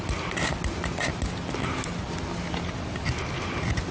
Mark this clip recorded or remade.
recorded